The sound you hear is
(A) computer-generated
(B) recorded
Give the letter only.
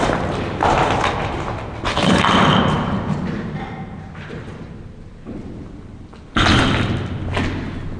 B